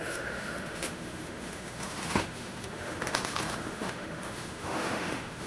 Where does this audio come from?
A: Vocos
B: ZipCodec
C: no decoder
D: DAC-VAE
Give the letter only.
D